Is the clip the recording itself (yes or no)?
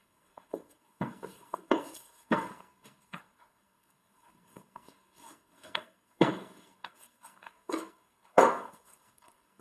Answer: no